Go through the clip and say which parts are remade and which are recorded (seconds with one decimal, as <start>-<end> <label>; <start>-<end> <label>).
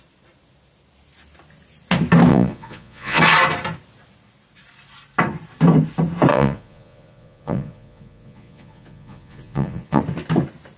0.0-2.3 recorded; 2.3-3.2 remade; 3.2-6.3 recorded; 6.3-10.0 remade; 10.0-10.8 recorded